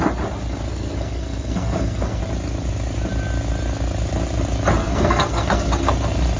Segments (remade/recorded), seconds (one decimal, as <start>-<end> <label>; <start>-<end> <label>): 0.0-0.7 recorded; 0.7-2.2 remade; 2.2-4.8 recorded; 4.8-5.9 remade; 5.9-6.4 recorded